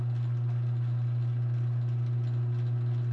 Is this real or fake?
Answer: real